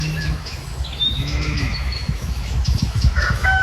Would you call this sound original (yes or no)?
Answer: no